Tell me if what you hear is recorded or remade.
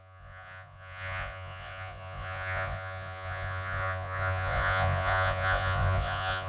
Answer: remade